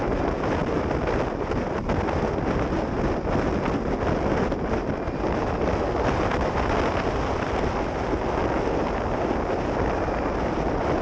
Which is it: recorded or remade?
recorded